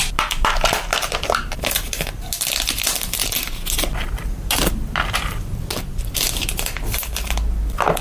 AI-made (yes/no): no